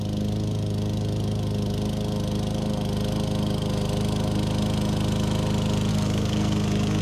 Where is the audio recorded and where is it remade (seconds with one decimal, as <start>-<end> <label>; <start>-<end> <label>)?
0.0-5.9 recorded; 5.9-7.0 remade

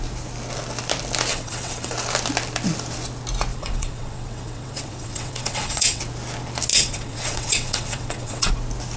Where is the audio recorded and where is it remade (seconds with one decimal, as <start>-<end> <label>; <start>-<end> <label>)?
0.0-1.3 recorded; 1.3-1.9 remade; 1.9-3.5 recorded; 3.5-6.0 remade; 6.0-6.7 recorded; 6.7-8.5 remade; 8.5-9.0 recorded

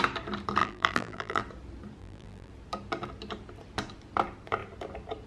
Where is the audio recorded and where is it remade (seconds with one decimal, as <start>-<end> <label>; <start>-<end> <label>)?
0.0-0.6 recorded; 0.6-1.4 remade; 1.4-2.0 recorded; 2.0-2.5 remade; 2.5-5.3 recorded